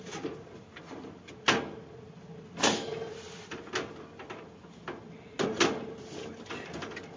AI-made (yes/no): no